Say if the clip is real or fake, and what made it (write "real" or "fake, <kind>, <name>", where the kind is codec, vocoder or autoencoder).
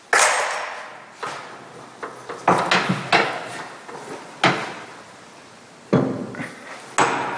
real